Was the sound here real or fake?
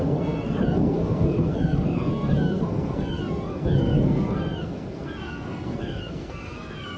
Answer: fake